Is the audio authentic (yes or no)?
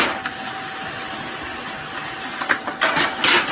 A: yes